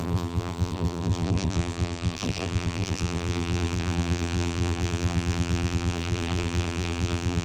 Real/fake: fake